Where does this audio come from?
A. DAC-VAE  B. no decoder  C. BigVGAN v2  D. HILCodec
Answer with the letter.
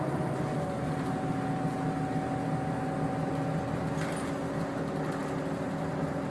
B